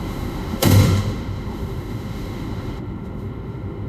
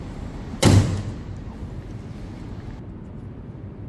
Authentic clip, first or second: second